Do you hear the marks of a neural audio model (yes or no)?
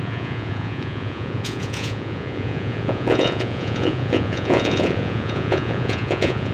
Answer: yes